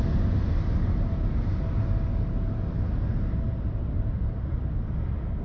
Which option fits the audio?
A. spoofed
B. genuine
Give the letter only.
B